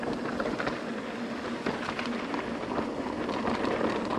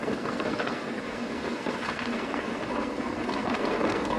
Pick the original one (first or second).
first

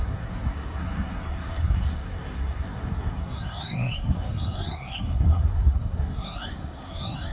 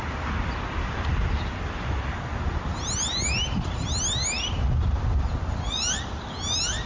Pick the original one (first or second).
second